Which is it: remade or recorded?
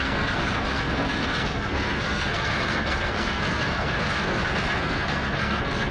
remade